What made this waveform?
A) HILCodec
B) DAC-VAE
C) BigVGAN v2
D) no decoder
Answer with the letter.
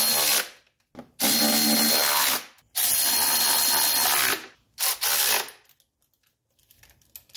D